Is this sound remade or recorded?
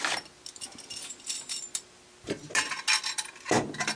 recorded